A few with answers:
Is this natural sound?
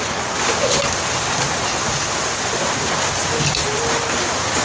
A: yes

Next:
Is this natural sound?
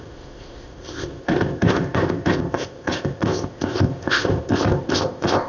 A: no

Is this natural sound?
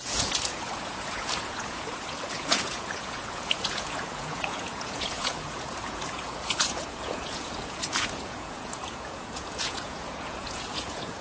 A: no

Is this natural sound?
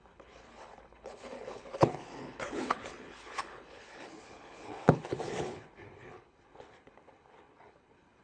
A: no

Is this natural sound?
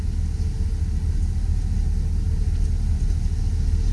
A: yes